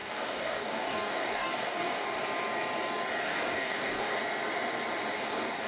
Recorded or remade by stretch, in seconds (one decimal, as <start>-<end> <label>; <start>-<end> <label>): 0.0-2.2 remade; 2.2-3.2 recorded; 3.2-4.2 remade; 4.2-5.1 recorded; 5.1-5.7 remade

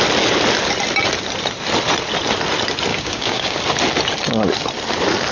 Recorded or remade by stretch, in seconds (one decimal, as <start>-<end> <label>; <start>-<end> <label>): 0.0-2.9 recorded; 2.9-3.6 remade; 3.6-5.3 recorded

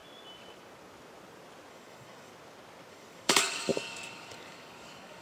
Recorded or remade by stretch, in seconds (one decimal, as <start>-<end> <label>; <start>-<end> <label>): 0.0-1.7 recorded; 1.7-2.3 remade; 2.3-2.9 recorded; 2.9-5.2 remade

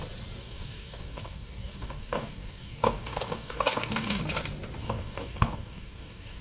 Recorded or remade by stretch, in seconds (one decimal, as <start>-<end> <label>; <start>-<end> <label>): 0.0-0.4 recorded; 0.4-4.2 remade; 4.2-4.8 recorded; 4.8-6.4 remade

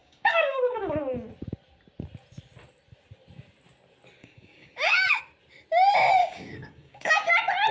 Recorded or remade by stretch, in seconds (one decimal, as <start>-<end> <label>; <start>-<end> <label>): 0.0-1.0 remade; 1.0-4.2 recorded; 4.2-5.2 remade; 5.2-6.2 recorded; 6.2-7.3 remade; 7.3-7.7 recorded

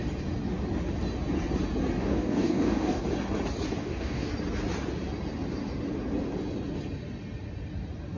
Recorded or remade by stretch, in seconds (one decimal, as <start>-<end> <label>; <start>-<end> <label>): 0.0-2.0 recorded; 2.0-3.0 remade; 3.0-3.8 recorded; 3.8-4.3 remade; 4.3-8.2 recorded

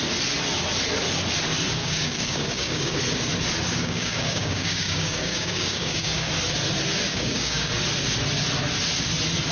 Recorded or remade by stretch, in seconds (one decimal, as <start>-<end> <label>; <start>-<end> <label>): 0.0-1.8 recorded; 1.8-3.0 remade; 3.0-3.7 recorded; 3.7-6.3 remade; 6.3-7.1 recorded; 7.1-7.7 remade; 7.7-9.5 recorded